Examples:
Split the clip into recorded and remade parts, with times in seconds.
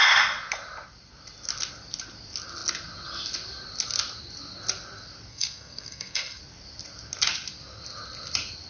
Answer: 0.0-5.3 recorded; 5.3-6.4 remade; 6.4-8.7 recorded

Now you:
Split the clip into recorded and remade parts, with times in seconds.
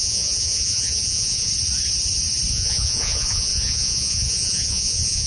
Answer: 0.0-1.5 remade; 1.5-2.5 recorded; 2.5-5.3 remade